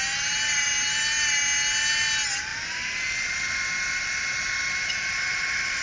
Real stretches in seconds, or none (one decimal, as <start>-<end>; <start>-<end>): 0.0-5.8